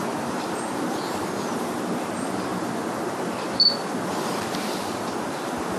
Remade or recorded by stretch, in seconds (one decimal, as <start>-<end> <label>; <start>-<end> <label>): 0.0-5.8 recorded

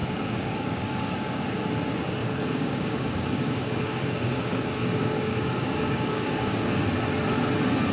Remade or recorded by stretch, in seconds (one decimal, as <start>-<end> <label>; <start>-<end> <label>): 0.0-1.4 remade; 1.4-2.2 recorded; 2.2-6.8 remade; 6.8-7.9 recorded

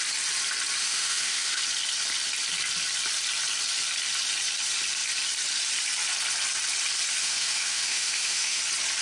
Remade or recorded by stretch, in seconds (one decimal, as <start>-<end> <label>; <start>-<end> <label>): 0.0-0.8 recorded; 0.8-1.6 remade; 1.6-7.2 recorded; 7.2-8.6 remade; 8.6-9.0 recorded

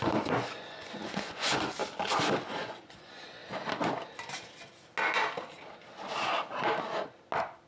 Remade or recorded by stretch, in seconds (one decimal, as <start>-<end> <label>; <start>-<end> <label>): 0.0-1.8 remade; 1.8-2.5 recorded; 2.5-3.4 remade; 3.4-7.7 recorded

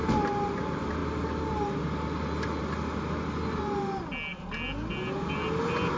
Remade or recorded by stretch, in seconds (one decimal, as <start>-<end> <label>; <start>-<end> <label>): 0.0-6.0 recorded

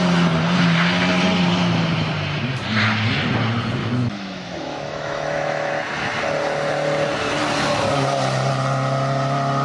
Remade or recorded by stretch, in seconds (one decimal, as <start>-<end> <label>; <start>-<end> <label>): 0.0-3.8 recorded; 3.8-5.7 remade; 5.7-9.6 recorded

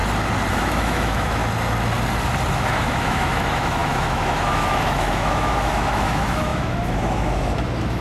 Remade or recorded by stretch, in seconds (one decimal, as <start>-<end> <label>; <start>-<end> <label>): 0.0-0.5 recorded; 0.5-1.4 remade; 1.4-2.5 recorded; 2.5-8.0 remade

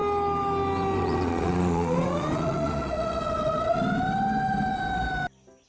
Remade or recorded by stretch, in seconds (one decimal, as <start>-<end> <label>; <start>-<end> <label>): 0.0-1.0 recorded; 1.0-3.8 remade; 3.8-5.7 recorded